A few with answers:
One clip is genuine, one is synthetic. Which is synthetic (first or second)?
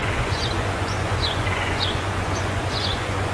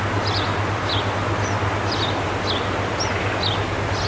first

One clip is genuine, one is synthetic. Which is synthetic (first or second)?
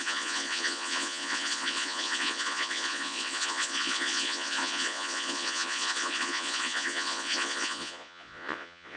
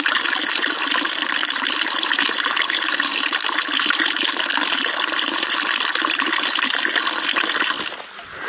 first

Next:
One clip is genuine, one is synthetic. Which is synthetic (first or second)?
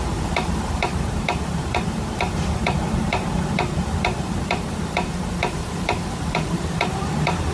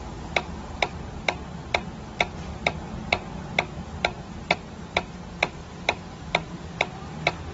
first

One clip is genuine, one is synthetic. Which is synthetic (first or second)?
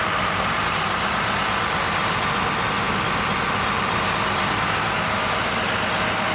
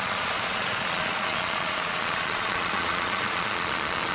second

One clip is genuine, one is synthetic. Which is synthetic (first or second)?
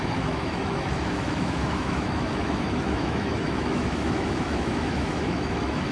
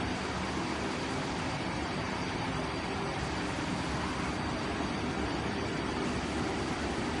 first